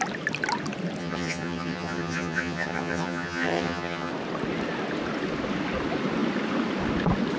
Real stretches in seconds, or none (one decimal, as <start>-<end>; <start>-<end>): 0.0-1.0; 4.1-7.4